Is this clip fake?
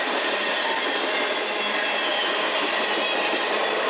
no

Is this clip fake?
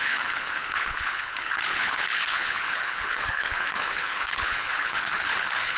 yes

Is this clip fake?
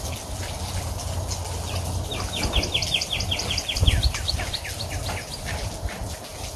no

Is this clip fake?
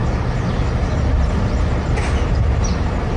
no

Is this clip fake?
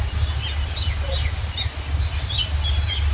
no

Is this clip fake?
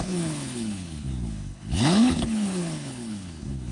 yes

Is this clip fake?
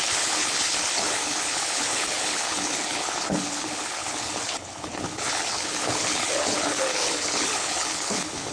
yes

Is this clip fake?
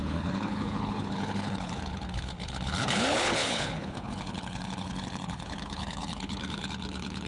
yes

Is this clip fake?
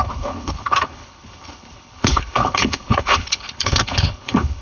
yes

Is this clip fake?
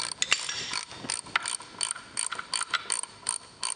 no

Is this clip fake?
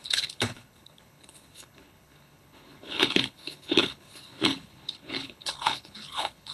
yes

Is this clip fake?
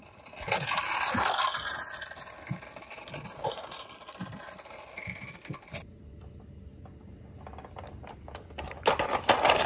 no